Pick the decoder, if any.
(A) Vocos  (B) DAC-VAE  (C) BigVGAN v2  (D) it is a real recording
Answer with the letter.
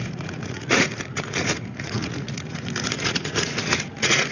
A